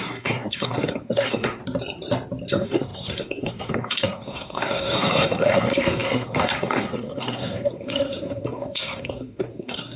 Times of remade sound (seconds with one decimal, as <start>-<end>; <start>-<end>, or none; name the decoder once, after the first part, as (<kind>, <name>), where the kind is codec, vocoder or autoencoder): 0.0-1.6 (codec, SNAC); 2.5-10.0